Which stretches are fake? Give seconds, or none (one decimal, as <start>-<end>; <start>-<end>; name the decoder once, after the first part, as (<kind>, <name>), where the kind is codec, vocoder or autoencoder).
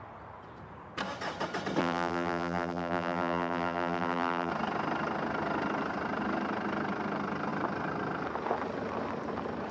1.8-4.5 (vocoder, BigVGAN v2)